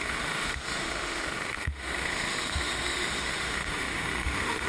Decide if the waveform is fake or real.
fake